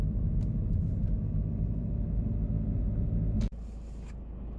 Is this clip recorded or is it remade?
recorded